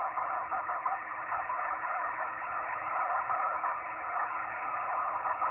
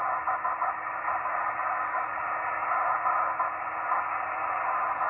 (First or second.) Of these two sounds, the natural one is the second